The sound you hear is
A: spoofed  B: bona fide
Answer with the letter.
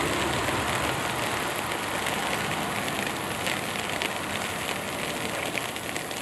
B